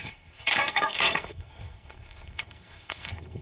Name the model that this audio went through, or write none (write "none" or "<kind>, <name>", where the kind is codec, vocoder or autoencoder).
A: codec, SNAC